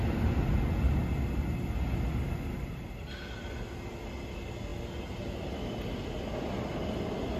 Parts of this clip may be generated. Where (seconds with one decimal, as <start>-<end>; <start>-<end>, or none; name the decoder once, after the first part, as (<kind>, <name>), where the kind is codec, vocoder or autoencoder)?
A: none